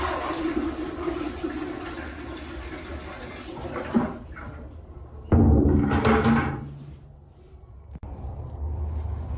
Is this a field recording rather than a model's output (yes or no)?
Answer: yes